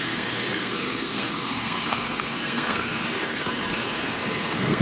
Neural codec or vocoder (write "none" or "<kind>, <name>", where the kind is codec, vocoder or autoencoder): codec, SNAC